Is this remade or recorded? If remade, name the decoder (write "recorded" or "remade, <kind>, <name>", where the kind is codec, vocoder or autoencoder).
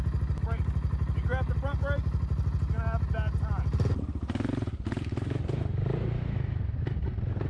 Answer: recorded